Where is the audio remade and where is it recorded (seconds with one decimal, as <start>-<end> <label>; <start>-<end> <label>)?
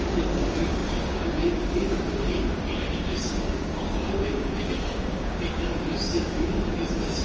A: 0.0-7.2 remade